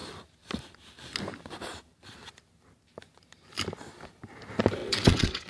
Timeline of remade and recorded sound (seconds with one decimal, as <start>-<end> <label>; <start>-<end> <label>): 0.0-4.8 recorded; 4.8-5.5 remade